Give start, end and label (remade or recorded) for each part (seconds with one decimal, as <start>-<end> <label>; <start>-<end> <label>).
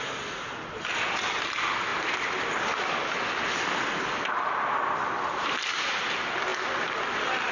0.0-7.5 recorded